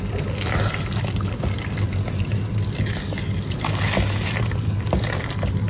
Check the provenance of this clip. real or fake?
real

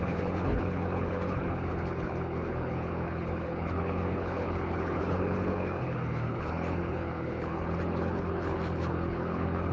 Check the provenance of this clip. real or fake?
fake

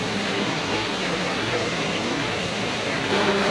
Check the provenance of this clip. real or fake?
fake